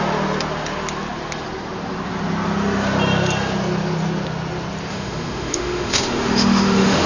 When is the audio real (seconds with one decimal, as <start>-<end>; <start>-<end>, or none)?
0.0-4.9